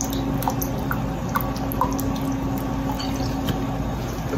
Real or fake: real